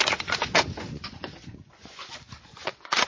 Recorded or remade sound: remade